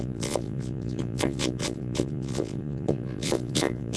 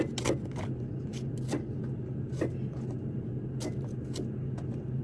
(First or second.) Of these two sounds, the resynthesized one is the first